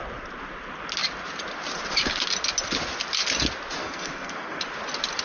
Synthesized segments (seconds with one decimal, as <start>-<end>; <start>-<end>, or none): 3.8-4.6